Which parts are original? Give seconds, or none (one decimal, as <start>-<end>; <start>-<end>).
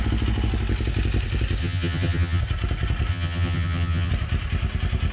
0.0-1.6; 2.4-3.1; 4.1-5.1